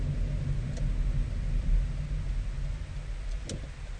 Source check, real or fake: real